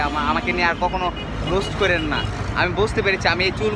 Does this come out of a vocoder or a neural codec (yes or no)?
no